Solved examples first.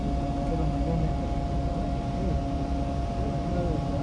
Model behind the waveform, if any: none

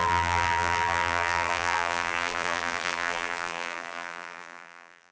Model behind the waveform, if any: vocoder, BigVGAN v2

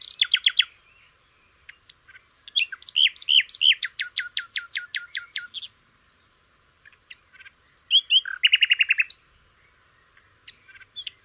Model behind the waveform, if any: none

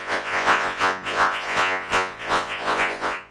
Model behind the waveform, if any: vocoder, Vocos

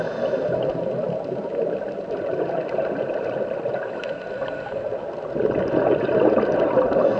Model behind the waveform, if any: none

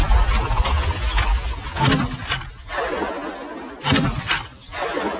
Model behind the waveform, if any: none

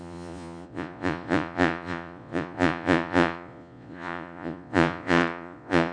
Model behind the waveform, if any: vocoder, Vocos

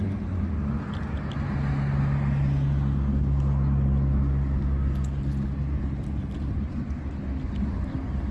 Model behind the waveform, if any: none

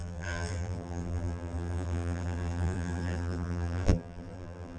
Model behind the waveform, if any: vocoder, BigVGAN v2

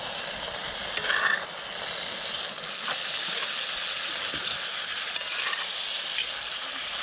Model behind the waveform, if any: none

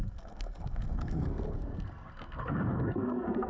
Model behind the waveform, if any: codec, SNAC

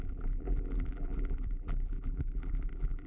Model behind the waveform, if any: vocoder, BigVGAN v2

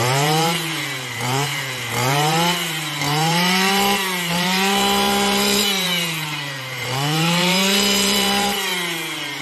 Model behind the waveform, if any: vocoder, BigVGAN v2